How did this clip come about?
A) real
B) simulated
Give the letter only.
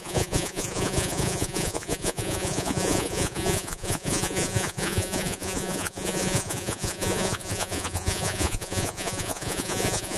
B